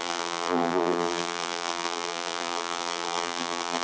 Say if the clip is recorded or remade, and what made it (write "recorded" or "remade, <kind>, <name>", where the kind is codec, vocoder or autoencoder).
remade, vocoder, BigVGAN v2